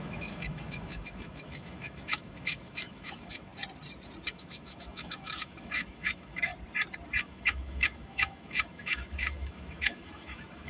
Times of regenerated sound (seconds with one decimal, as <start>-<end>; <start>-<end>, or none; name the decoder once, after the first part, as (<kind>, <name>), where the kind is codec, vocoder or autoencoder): 0.0-3.5 (autoencoder, DAC-VAE); 4.2-6.5; 7.2-10.7